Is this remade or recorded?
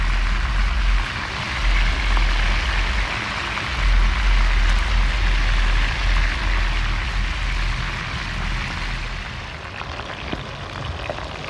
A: recorded